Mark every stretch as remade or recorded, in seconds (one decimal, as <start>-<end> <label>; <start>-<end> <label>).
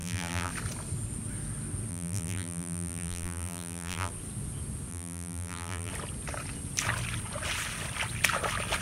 0.0-0.5 remade; 0.5-1.9 recorded; 1.9-4.1 remade; 4.1-4.9 recorded; 4.9-5.9 remade; 5.9-8.8 recorded